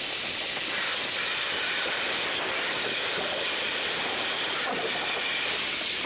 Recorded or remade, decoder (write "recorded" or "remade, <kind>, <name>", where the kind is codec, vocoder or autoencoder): recorded